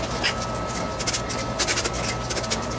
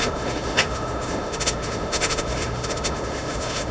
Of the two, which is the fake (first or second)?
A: second